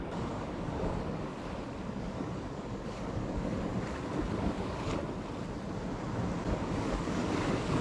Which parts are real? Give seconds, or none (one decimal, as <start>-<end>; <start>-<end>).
1.3-1.9; 3.7-4.3; 4.9-6.7